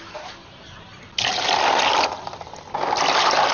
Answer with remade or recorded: recorded